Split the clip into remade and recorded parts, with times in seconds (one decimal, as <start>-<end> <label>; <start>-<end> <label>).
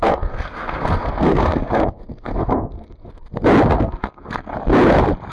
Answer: 0.0-3.2 remade; 3.2-3.8 recorded; 3.8-4.5 remade; 4.5-5.3 recorded